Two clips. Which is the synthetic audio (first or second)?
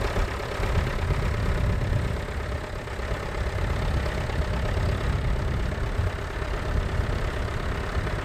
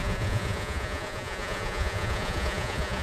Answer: second